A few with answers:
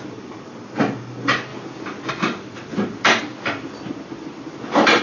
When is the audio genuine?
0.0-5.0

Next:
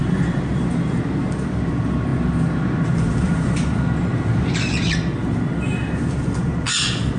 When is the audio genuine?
0.6-7.2

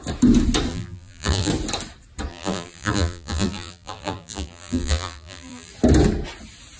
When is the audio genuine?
0.0-0.7; 1.5-2.3; 5.7-6.8

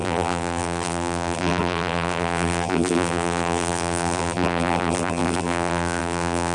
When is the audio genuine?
none

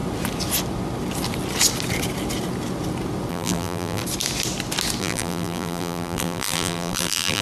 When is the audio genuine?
0.0-3.3; 4.0-5.0

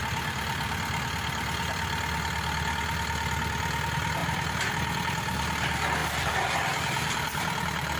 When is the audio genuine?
0.0-4.2; 4.7-6.0; 6.5-8.0